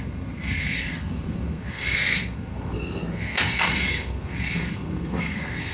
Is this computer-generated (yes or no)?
yes